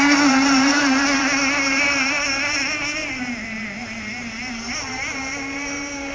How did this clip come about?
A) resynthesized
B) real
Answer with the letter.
A